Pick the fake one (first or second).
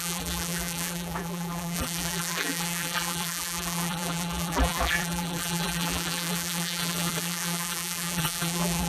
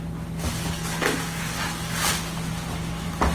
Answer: first